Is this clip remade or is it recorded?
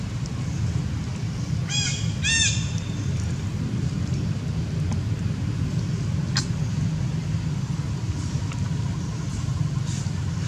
recorded